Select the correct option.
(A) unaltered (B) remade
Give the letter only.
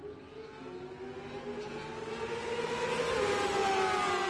A